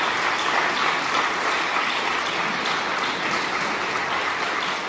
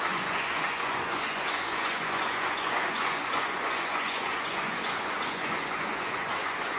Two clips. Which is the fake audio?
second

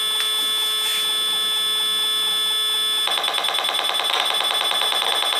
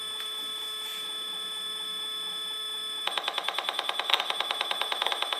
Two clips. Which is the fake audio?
second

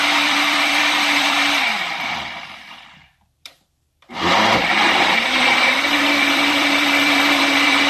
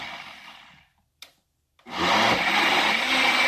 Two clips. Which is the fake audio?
first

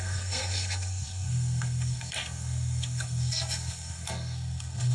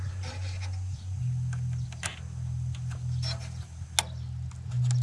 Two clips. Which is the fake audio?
first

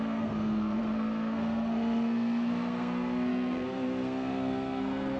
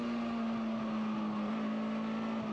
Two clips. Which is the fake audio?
first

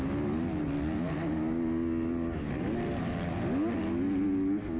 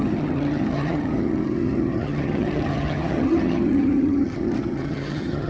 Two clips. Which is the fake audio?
second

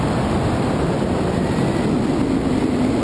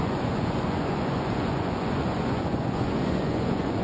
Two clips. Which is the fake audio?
second